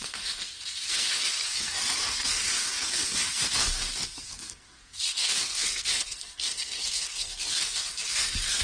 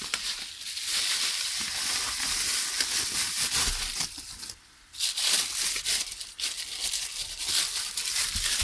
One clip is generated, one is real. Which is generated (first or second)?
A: first